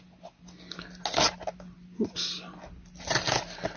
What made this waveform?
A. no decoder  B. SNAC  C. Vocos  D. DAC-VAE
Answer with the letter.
A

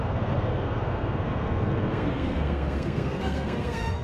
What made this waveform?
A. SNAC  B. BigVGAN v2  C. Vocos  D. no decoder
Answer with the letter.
A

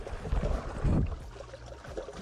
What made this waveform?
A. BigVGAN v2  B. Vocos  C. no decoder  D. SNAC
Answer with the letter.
C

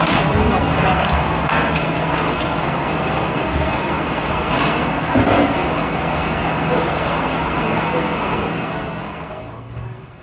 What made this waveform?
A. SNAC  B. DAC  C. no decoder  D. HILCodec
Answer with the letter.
A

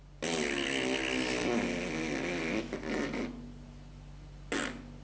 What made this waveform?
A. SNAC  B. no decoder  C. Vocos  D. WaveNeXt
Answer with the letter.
B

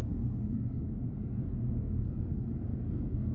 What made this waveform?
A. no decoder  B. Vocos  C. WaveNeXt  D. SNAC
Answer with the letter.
D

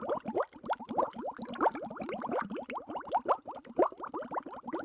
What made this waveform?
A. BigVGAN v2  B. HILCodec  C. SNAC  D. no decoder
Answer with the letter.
D